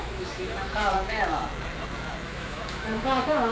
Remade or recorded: remade